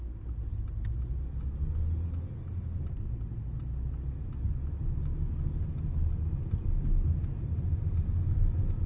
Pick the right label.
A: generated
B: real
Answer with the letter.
B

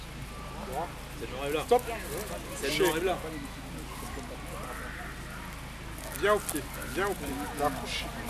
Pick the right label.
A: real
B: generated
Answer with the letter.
A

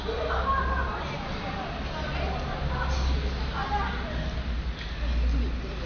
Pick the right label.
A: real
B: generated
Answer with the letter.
A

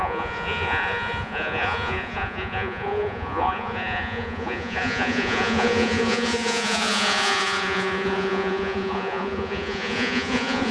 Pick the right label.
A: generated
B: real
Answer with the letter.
A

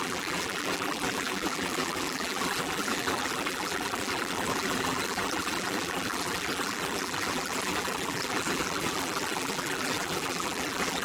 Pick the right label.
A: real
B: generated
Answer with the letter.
B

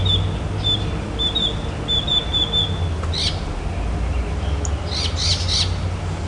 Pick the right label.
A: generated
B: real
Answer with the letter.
B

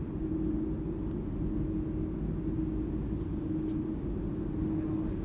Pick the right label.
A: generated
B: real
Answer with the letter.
B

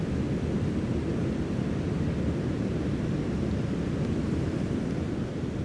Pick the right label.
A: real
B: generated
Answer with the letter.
A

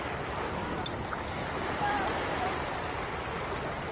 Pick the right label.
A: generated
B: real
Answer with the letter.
A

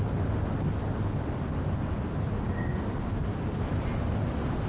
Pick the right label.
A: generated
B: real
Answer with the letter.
B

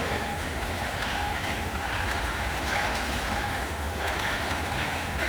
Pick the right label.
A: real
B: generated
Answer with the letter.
B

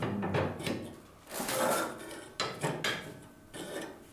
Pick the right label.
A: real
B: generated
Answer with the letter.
A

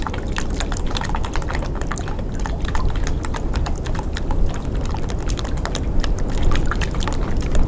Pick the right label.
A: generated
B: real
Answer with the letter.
B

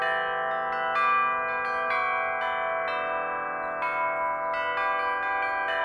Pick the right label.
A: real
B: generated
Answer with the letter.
A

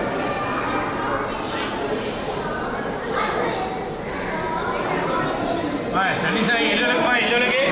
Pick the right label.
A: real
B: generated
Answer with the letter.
A